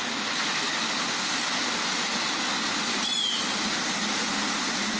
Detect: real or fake real